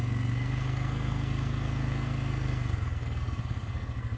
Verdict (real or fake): fake